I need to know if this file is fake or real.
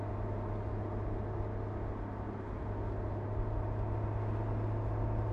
real